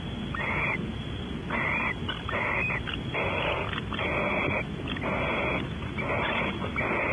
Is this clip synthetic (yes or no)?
no